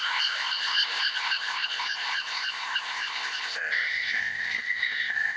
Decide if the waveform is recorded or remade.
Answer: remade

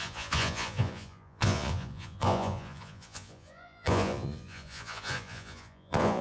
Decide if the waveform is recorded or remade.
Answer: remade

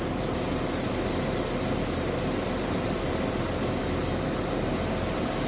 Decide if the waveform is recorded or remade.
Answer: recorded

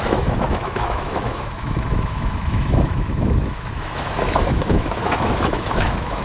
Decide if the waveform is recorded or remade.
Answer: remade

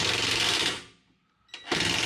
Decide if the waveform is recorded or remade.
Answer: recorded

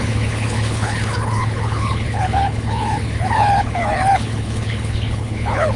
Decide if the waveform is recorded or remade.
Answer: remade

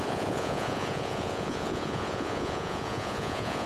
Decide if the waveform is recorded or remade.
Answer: remade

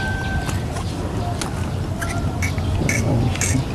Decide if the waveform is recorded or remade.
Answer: recorded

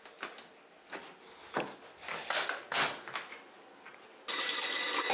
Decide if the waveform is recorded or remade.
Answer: recorded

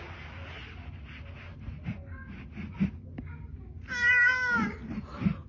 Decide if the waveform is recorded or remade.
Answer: recorded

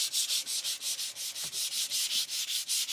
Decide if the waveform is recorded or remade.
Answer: recorded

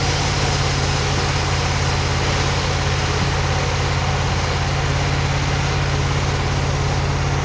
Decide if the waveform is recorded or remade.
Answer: recorded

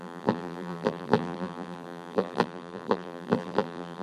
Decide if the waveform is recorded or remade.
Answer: remade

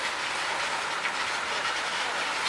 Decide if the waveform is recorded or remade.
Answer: recorded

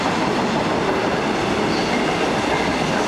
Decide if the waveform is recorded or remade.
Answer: recorded